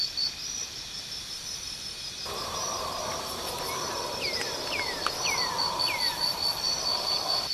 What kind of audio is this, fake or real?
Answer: real